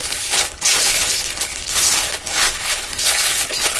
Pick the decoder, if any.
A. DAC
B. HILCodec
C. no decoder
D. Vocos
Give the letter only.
B